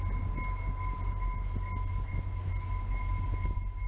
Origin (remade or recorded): recorded